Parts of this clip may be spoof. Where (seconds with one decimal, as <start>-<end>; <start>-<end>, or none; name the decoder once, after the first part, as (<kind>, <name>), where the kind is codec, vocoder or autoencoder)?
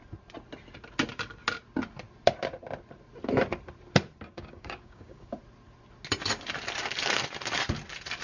4.3-5.4 (codec, DAC)